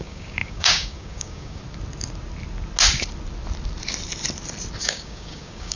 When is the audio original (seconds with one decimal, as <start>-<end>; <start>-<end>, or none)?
1.6-4.8